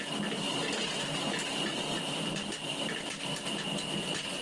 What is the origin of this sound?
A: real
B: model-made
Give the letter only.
A